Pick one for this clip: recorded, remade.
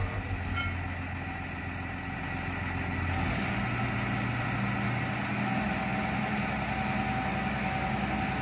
recorded